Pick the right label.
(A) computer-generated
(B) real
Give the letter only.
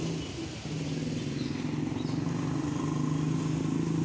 B